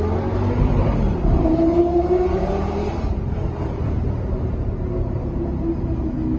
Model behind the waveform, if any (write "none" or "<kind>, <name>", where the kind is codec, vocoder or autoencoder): vocoder, BigVGAN v2